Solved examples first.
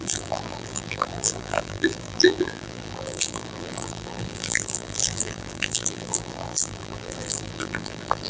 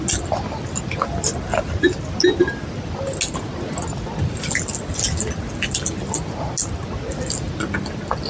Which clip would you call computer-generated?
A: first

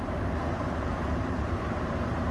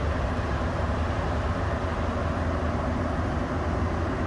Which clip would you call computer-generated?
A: first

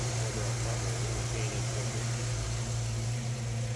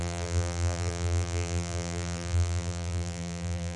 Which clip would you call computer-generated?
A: second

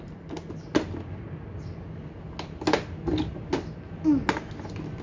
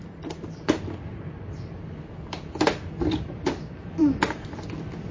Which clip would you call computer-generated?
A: second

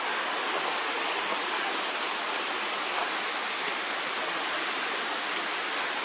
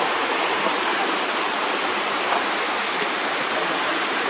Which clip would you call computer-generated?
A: second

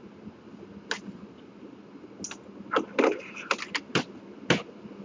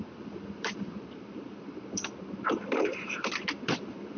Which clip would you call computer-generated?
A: second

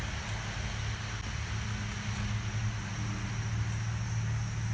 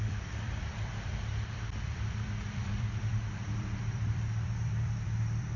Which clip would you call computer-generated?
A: second